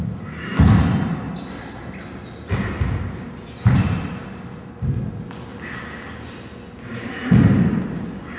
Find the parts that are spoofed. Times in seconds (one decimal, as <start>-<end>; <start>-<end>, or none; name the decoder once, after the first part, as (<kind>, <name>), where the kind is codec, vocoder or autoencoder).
none